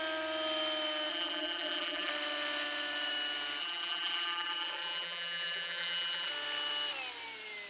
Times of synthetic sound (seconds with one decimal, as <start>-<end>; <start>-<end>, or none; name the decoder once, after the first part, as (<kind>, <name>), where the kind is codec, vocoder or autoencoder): 1.1-2.1 (vocoder, BigVGAN v2); 3.6-6.3